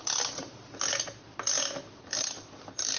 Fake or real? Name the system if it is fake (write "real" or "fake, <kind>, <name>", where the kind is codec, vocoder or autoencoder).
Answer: real